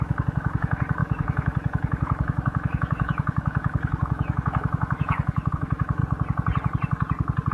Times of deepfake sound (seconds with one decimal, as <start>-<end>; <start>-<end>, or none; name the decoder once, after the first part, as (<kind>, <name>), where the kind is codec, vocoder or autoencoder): 0.0-6.0 (autoencoder, DAC-VAE)